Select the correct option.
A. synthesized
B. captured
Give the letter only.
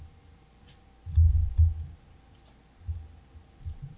B